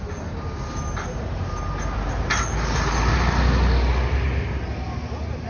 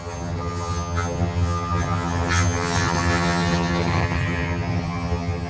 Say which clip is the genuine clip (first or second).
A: first